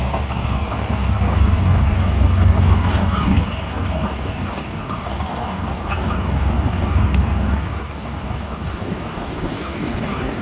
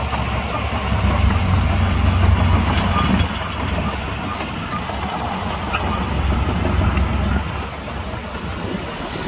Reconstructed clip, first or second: first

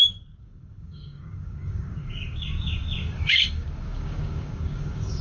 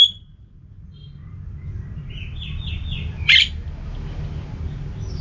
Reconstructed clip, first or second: first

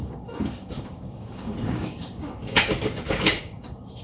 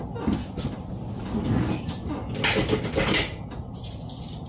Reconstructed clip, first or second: first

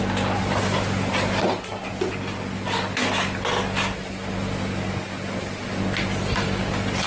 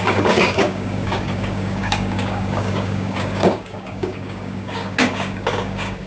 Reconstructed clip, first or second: second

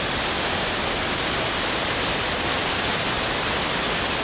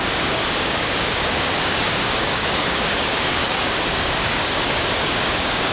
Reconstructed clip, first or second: second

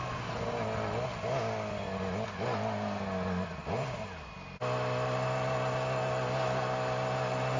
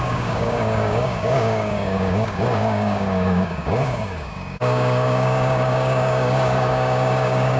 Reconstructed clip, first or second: second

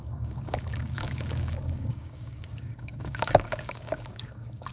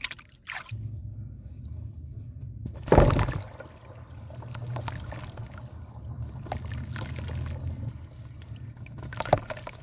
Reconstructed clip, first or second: first